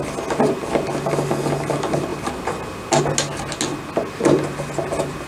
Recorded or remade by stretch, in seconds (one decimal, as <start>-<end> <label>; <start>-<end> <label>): 0.0-5.3 recorded